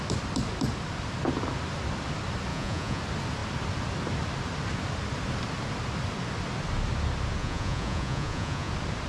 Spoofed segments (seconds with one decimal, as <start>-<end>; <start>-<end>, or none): 2.5-3.0; 7.4-8.7